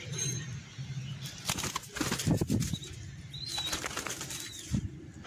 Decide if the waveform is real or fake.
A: real